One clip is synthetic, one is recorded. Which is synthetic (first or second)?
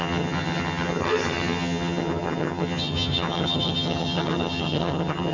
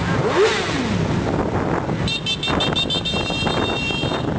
first